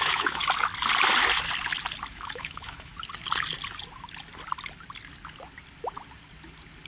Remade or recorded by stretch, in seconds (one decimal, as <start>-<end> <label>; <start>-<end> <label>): 0.0-0.4 remade; 0.4-2.1 recorded; 2.1-2.9 remade; 2.9-6.9 recorded

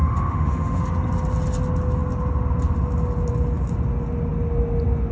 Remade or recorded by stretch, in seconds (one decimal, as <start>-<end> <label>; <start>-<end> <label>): 0.0-0.8 remade; 0.8-5.1 recorded

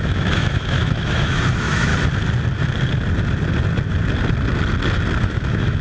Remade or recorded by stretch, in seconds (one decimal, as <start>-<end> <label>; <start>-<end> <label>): 0.0-1.9 remade; 1.9-5.2 recorded; 5.2-5.8 remade

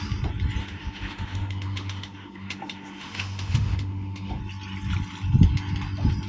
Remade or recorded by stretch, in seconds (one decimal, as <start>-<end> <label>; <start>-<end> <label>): 0.0-0.6 recorded; 0.6-4.4 remade; 4.4-6.3 recorded

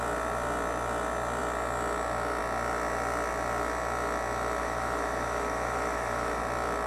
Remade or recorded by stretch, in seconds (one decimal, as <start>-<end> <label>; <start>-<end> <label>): 0.0-4.6 recorded; 4.6-6.4 remade; 6.4-6.9 recorded

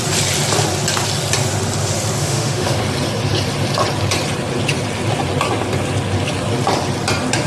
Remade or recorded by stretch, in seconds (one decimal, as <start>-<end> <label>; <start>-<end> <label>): 0.0-2.2 recorded; 2.2-2.8 remade; 2.8-7.5 recorded